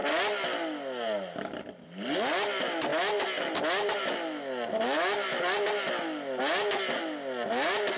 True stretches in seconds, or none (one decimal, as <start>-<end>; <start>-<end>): 0.0-8.0